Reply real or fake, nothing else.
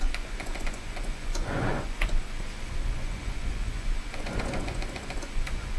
fake